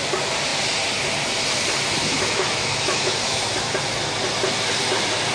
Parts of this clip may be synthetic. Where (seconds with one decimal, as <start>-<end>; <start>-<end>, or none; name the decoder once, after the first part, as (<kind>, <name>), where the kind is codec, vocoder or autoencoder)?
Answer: 2.0-3.7 (autoencoder, DAC-VAE)